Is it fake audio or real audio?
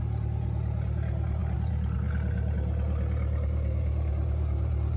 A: real